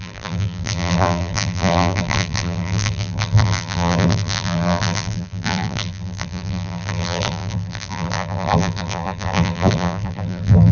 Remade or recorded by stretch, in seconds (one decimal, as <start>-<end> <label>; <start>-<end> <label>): 0.0-10.7 remade